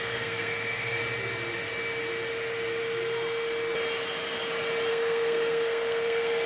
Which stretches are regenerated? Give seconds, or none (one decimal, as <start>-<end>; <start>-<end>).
0.0-1.0; 4.9-6.5